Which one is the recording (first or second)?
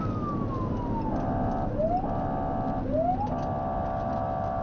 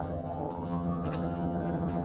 first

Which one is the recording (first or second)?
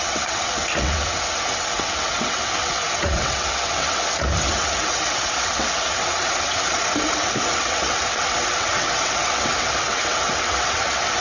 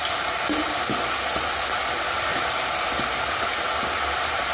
second